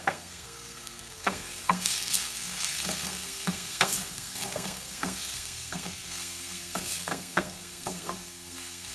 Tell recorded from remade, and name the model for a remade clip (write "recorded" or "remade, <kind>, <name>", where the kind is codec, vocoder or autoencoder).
remade, codec, SNAC